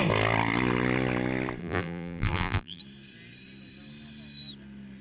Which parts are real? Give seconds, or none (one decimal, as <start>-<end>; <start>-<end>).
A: 0.0-1.6; 2.8-5.0